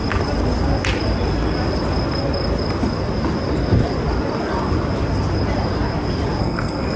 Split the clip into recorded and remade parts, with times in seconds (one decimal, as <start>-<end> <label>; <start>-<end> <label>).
0.0-6.4 recorded; 6.4-7.0 remade